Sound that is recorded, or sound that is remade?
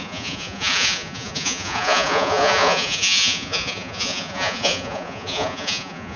remade